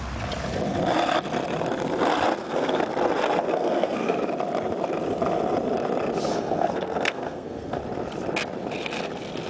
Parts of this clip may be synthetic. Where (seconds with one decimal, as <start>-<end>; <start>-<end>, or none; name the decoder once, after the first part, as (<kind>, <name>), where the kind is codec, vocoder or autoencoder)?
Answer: 2.4-2.9 (codec, SNAC); 3.5-4.2; 6.3-7.8